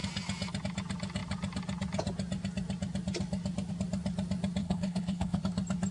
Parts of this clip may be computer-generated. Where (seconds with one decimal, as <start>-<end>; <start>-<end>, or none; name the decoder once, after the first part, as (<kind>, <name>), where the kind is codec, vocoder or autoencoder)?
4.6-5.4 (codec, HILCodec)